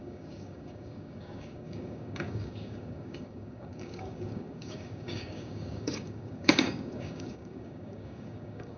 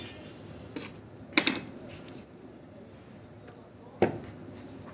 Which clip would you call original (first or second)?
second